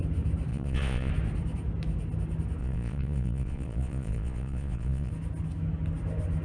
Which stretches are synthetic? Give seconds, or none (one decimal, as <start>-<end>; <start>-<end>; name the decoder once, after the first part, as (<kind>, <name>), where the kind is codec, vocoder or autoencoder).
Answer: 0.5-1.1 (vocoder, Vocos); 2.6-5.1